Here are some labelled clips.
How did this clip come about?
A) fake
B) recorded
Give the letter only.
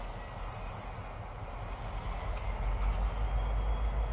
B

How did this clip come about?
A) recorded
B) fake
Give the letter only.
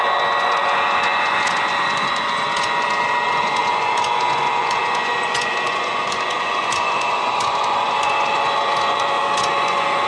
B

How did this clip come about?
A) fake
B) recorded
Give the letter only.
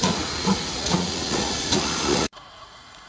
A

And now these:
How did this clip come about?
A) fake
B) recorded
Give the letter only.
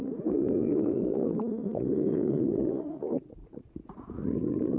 A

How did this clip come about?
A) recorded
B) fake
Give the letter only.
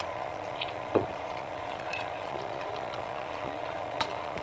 B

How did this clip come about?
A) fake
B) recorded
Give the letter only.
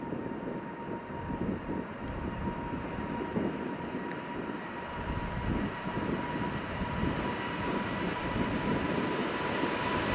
B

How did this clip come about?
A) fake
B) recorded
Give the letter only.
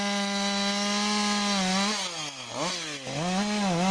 B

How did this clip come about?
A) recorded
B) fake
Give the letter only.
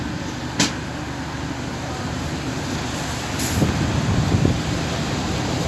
A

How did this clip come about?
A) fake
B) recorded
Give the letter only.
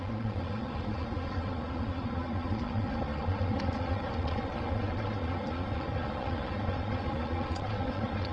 A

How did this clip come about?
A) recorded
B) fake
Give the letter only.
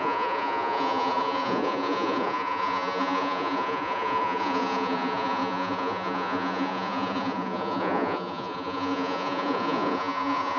B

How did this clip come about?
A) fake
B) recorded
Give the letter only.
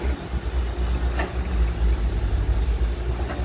B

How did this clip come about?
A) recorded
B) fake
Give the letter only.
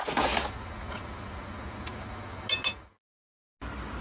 A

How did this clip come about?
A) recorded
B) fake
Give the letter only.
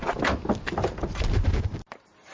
A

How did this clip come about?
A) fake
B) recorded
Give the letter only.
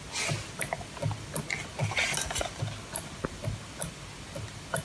B